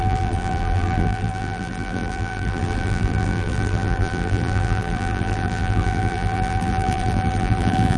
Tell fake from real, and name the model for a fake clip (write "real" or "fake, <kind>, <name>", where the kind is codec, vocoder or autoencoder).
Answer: fake, vocoder, BigVGAN v2